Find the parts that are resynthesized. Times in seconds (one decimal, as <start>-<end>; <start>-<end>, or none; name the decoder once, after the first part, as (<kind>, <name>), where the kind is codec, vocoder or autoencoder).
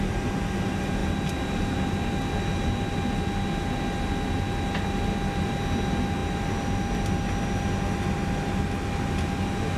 none